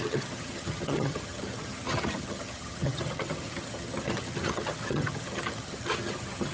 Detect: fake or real fake